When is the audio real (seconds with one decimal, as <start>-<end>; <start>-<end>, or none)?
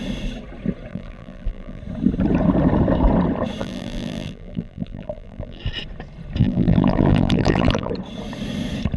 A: 0.0-0.9; 1.8-3.6; 5.6-6.4; 7.9-9.0